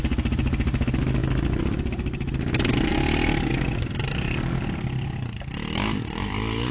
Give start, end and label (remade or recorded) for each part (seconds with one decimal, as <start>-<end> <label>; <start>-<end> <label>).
0.0-6.7 recorded